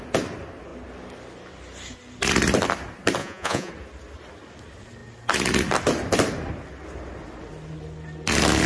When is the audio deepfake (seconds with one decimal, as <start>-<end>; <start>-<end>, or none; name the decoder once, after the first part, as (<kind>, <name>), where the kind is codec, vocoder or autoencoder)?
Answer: 3.2-3.7 (vocoder, Vocos)